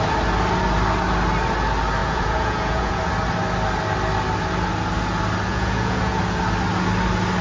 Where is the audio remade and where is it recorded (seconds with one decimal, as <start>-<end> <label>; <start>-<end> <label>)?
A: 0.0-2.0 recorded; 2.0-3.0 remade; 3.0-5.5 recorded; 5.5-6.2 remade; 6.2-7.4 recorded